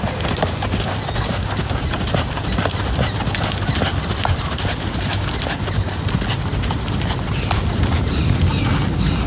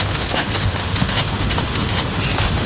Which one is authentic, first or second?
first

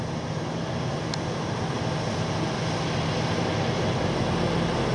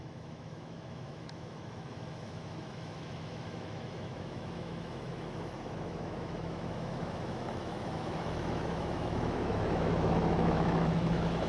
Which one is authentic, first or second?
first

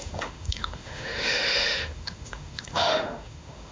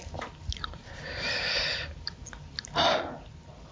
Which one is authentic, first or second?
second